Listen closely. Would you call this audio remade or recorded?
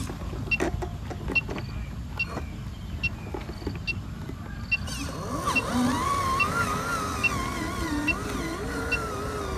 recorded